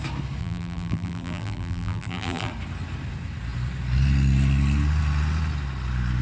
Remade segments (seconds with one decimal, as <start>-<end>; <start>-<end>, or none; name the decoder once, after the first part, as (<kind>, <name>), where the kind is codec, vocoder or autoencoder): 0.4-2.5 (vocoder, BigVGAN v2)